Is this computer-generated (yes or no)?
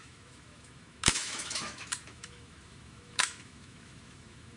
yes